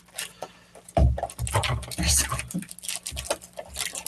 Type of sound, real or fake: real